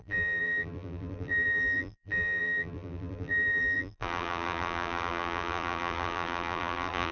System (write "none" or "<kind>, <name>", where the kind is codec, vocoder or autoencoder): vocoder, BigVGAN v2